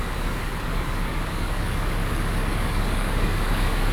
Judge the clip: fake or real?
fake